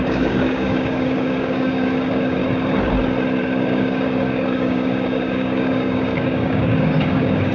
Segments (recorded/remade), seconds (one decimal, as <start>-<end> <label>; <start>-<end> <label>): 0.0-2.4 remade; 2.4-3.4 recorded; 3.4-7.5 remade